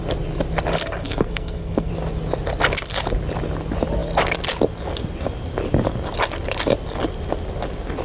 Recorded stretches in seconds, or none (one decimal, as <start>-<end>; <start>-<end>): 0.0-1.0; 1.9-8.0